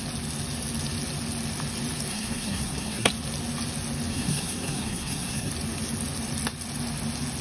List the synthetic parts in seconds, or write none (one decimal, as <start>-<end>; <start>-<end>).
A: 2.1-3.1; 4.1-5.5